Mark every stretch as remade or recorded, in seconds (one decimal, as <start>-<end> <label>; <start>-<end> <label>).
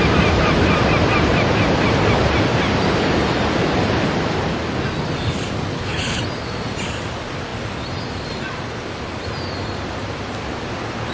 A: 0.0-5.7 recorded; 5.7-6.2 remade; 6.2-11.1 recorded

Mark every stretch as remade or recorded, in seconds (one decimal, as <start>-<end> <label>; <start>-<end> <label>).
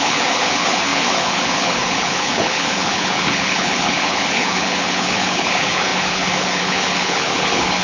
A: 0.0-7.8 remade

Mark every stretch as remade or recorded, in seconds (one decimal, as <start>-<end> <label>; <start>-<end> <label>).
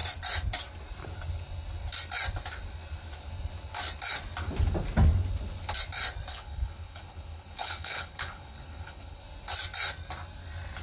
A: 0.0-6.3 recorded; 6.3-9.2 remade; 9.2-10.8 recorded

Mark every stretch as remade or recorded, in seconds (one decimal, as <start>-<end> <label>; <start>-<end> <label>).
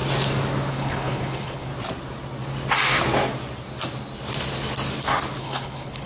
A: 0.0-0.7 recorded; 0.7-1.7 remade; 1.7-5.4 recorded; 5.4-6.1 remade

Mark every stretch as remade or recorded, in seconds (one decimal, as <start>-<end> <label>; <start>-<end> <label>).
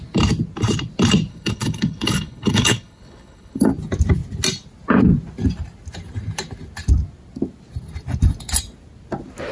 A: 0.0-1.3 recorded; 1.3-3.7 remade; 3.7-9.5 recorded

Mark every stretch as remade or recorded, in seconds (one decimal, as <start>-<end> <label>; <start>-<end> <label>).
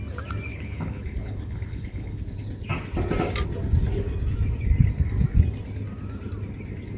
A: 0.0-0.5 recorded; 0.5-2.2 remade; 2.2-7.0 recorded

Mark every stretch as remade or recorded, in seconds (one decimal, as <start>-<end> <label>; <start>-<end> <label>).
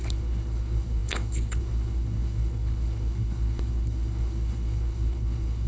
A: 0.0-5.7 remade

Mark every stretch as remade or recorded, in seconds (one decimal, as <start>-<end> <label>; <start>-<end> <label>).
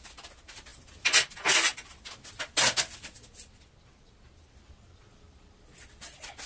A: 0.0-6.5 recorded